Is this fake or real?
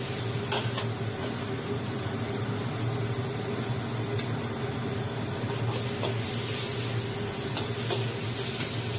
real